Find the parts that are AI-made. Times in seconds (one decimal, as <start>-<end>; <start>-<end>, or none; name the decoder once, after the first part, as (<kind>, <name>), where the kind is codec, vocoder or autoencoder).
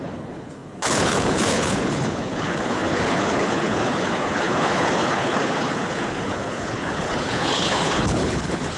0.0-8.8 (codec, HILCodec)